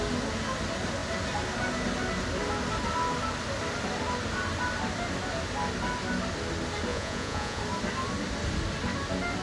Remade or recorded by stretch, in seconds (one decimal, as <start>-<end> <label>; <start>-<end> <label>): 0.0-6.9 recorded; 6.9-7.6 remade; 7.6-9.4 recorded